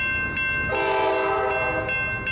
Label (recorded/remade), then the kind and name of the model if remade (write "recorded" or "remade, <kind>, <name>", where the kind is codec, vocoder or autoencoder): recorded